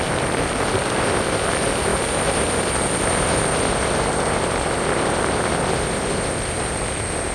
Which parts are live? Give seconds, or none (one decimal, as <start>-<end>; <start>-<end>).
0.0-7.3